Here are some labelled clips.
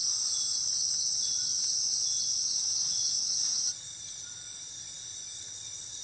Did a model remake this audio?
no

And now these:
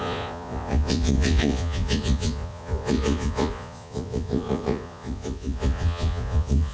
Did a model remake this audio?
yes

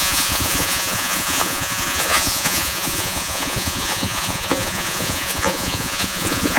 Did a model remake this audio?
yes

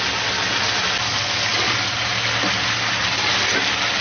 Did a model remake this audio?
no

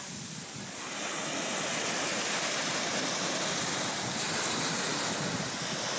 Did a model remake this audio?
no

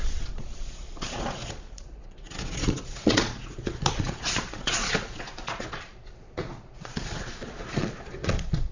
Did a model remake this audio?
yes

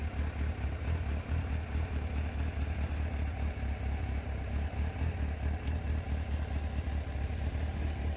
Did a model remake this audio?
no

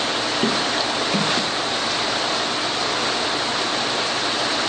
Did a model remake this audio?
no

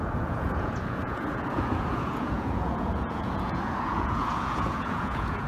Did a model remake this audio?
yes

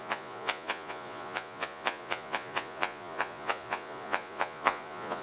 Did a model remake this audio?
yes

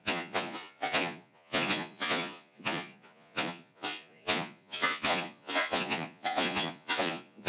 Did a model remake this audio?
yes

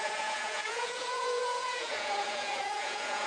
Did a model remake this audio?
yes